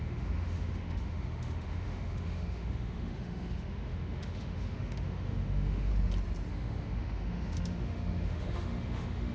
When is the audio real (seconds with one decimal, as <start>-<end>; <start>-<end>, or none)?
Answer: 5.9-6.5